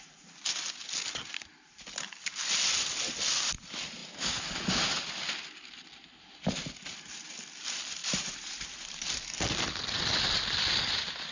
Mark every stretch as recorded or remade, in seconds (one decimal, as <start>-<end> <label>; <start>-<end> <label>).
0.0-8.0 recorded; 8.0-9.1 remade; 9.1-11.3 recorded